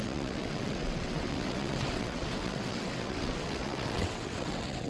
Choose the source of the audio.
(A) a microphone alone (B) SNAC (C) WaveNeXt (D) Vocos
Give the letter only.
C